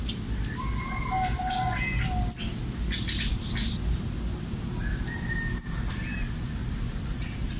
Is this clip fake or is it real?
real